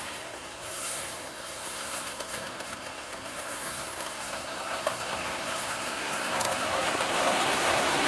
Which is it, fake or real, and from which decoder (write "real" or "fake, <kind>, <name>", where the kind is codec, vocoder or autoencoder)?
fake, codec, SNAC